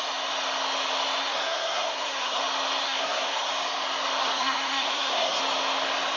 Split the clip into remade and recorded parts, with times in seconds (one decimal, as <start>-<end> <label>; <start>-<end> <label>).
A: 0.0-1.2 recorded; 1.2-2.4 remade; 2.4-2.8 recorded; 2.8-3.5 remade; 3.5-4.2 recorded; 4.2-5.4 remade; 5.4-6.2 recorded